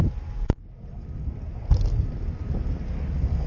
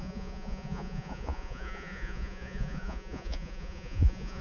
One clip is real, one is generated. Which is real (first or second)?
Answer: first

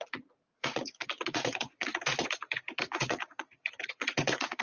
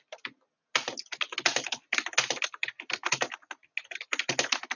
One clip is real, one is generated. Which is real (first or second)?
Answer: second